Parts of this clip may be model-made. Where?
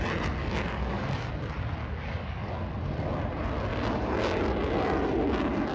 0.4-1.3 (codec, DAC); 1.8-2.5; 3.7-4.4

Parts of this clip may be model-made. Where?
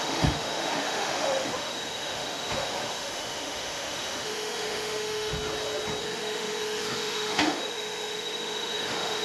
0.0-5.3 (autoencoder, DAC-VAE); 6.0-9.2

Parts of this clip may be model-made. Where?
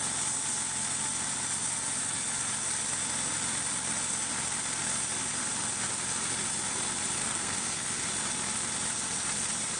7.2-8.1 (codec, SNAC)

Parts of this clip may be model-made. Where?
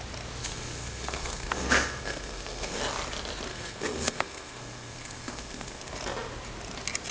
0.4-2.8 (codec, SNAC); 3.5-5.9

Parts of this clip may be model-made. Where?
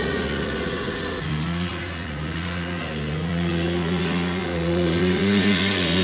0.0-6.0 (vocoder, Vocos)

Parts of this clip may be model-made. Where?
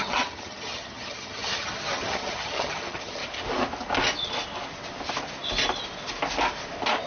0.0-3.2 (vocoder, HiFi-GAN)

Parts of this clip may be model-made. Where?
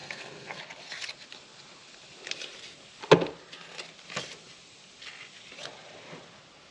0.0-0.6 (codec, SNAC)